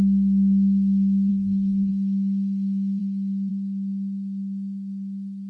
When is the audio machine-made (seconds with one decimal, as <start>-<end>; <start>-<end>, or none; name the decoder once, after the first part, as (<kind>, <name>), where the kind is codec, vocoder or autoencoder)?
1.3-1.9 (codec, SNAC)